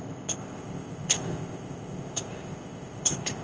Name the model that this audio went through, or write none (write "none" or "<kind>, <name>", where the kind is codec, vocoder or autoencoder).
codec, ZipCodec